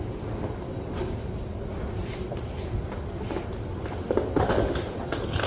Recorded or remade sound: recorded